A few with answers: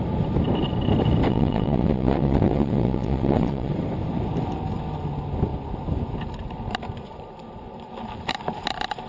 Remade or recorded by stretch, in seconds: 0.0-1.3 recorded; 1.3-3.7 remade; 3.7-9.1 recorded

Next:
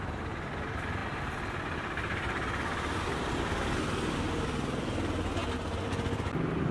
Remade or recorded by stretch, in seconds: 0.0-6.7 recorded

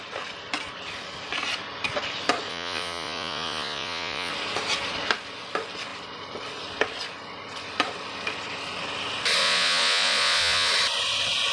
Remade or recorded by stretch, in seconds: 0.0-2.5 recorded; 2.5-4.3 remade; 4.3-9.4 recorded; 9.4-10.7 remade; 10.7-11.5 recorded

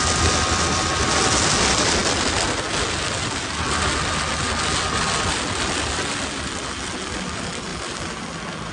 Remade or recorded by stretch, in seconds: 0.0-8.7 recorded

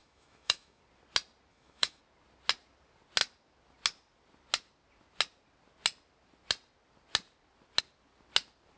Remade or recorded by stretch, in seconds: 0.0-0.8 remade; 0.8-1.5 recorded; 1.5-2.0 remade; 2.0-8.8 recorded